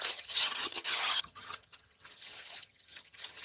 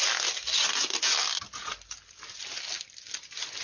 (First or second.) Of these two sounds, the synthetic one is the first